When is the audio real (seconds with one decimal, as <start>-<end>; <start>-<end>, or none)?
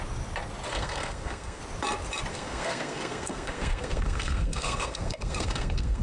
0.0-0.7; 1.6-2.3